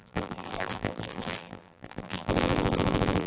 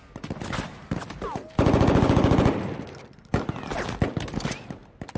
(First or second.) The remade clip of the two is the first